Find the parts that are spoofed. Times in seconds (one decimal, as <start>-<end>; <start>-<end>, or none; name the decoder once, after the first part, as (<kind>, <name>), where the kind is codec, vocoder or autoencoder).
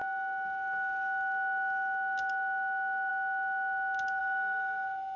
4.2-5.2 (codec, SNAC)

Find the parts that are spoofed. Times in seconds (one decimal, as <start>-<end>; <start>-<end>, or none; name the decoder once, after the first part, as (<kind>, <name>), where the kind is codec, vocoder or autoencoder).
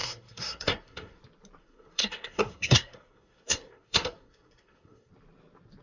0.0-1.2 (codec, SNAC); 1.6-5.1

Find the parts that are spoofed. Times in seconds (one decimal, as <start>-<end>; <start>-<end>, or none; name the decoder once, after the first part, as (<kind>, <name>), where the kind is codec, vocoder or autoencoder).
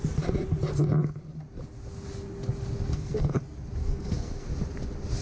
2.9-3.4 (codec, SNAC); 3.8-4.5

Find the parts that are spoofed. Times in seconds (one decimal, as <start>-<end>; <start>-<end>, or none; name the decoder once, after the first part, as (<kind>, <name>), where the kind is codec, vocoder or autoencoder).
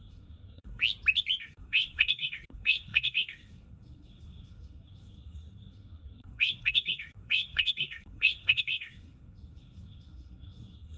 0.0-0.8 (codec, SNAC); 1.4-11.0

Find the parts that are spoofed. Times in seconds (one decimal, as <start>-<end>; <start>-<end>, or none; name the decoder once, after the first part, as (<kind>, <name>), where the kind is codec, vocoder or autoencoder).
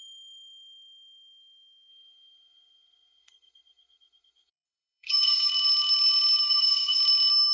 1.9-5.5 (codec, SNAC); 6.4-7.0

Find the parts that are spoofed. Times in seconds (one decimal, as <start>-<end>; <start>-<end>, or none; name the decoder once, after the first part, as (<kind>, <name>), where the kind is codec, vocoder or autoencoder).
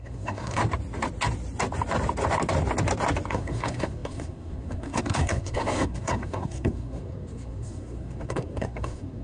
0.0-0.6 (codec, SNAC); 3.3-9.2